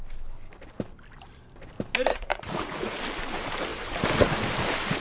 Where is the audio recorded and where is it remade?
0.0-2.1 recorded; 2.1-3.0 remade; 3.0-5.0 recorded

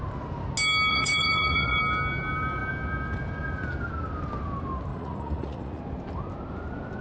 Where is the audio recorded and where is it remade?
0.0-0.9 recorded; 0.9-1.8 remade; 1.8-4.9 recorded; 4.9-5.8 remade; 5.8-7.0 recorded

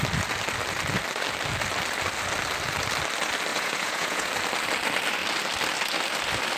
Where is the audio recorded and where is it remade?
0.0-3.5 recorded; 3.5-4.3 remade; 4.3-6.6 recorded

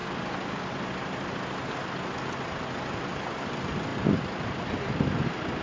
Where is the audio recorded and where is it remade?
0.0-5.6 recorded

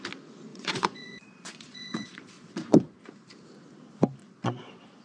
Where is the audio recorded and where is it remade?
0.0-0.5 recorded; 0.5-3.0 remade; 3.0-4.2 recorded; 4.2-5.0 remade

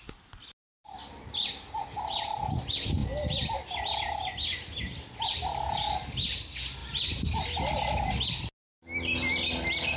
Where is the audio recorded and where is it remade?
0.0-10.0 recorded